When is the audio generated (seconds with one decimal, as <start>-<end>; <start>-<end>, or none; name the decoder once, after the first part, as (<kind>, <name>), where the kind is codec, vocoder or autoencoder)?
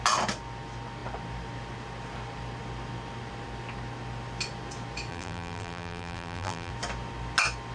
5.1-6.7 (vocoder, BigVGAN v2)